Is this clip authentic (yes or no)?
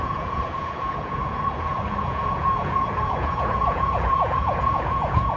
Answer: no